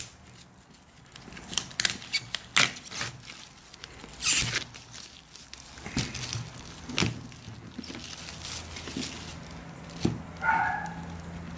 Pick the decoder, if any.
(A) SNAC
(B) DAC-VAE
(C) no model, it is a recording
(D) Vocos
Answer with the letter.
C